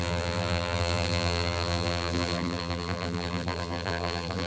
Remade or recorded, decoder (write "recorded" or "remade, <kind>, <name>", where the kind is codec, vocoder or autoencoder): remade, vocoder, BigVGAN v2